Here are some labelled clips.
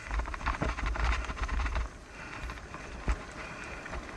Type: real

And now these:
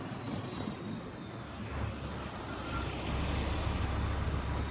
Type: real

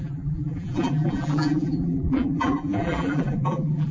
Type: fake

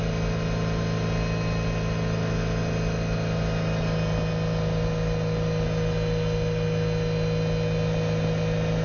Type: real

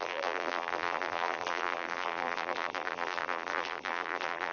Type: fake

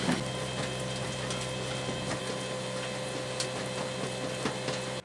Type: real